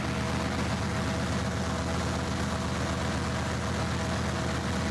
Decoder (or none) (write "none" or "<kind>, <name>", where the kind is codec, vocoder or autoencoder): none